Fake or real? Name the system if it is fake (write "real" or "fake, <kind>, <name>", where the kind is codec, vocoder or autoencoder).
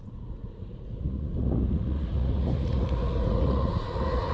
fake, vocoder, Vocos